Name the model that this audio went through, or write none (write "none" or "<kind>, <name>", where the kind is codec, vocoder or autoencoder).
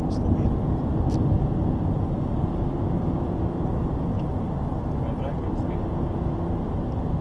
none